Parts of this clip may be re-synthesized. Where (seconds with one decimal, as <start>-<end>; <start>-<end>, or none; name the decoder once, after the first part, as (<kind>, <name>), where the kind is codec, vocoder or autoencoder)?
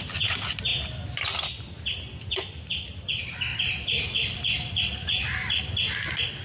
3.5-5.6 (vocoder, BigVGAN v2)